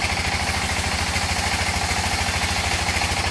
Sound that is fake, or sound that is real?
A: real